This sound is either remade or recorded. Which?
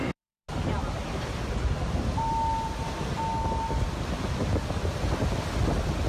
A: recorded